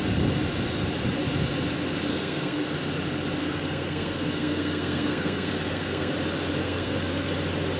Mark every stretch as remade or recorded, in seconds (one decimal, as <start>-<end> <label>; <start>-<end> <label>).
0.0-2.1 recorded; 2.1-2.7 remade; 2.7-3.4 recorded; 3.4-6.1 remade; 6.1-6.6 recorded; 6.6-7.3 remade; 7.3-7.8 recorded